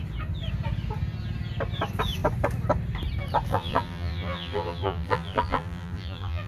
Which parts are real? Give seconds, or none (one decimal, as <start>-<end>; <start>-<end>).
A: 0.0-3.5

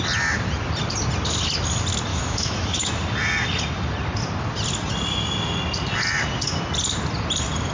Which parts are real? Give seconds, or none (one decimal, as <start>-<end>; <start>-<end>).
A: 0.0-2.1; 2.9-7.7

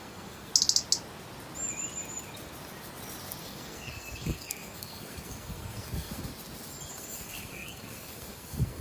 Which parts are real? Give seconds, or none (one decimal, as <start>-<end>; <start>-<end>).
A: 0.5-3.4; 6.3-6.9

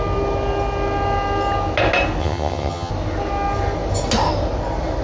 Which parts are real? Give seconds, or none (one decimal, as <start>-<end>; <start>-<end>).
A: 0.0-2.2; 2.9-5.0

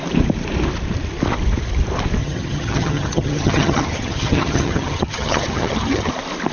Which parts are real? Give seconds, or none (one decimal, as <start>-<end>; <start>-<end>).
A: 0.0-2.2; 6.1-6.5

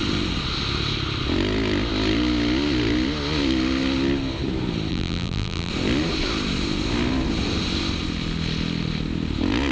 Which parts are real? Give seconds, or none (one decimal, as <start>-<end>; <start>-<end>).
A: 0.0-4.9; 5.7-9.7

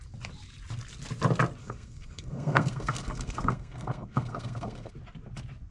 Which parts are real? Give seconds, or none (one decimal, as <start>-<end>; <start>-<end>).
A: 0.0-1.6; 4.9-5.7